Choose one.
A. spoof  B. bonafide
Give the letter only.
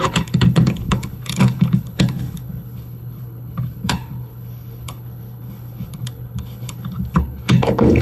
A